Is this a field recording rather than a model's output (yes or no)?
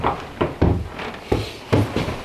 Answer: yes